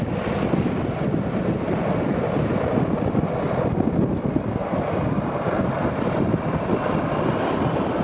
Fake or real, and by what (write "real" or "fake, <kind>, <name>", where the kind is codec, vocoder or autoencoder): real